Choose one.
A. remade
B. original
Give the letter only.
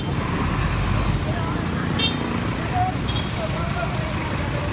B